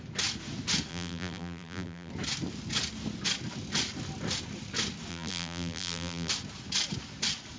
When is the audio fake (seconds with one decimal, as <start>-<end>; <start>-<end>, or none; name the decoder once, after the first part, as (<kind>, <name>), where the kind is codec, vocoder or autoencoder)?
0.9-2.1 (vocoder, BigVGAN v2); 5.1-6.3